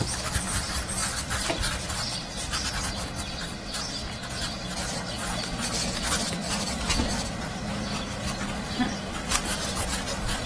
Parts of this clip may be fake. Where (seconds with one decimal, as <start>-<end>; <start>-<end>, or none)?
1.0-3.3; 6.4-7.7